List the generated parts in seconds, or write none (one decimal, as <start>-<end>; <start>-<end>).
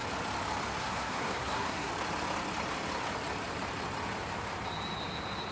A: 0.8-1.9